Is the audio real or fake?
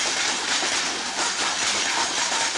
real